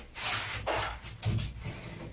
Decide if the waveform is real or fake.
real